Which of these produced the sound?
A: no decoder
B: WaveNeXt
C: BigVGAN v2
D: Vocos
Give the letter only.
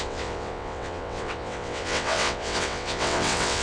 B